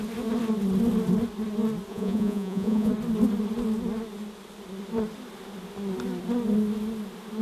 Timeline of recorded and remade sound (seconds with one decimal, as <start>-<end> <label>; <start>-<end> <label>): 0.0-1.9 recorded; 1.9-2.9 remade; 2.9-7.4 recorded